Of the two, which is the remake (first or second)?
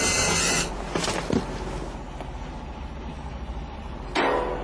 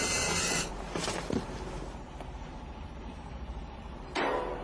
second